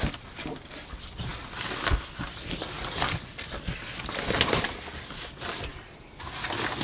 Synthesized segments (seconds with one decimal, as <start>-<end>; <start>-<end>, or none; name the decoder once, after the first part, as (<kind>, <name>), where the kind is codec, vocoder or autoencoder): none